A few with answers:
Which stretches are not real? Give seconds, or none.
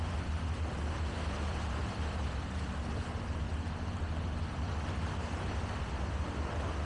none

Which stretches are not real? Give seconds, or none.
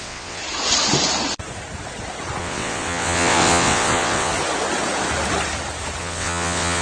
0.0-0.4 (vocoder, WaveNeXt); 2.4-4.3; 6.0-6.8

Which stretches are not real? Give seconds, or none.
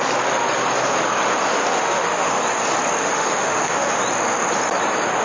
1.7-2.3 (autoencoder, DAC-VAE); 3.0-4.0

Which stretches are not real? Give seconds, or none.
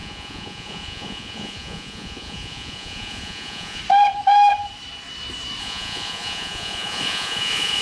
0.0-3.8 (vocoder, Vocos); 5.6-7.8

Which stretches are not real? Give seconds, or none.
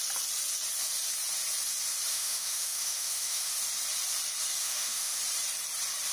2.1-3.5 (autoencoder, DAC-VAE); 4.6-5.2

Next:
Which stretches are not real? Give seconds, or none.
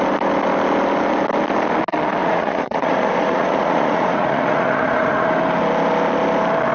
2.2-5.3 (vocoder, Vocos)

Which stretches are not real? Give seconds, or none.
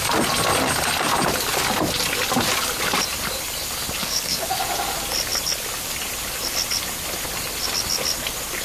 4.0-4.5 (codec, DAC)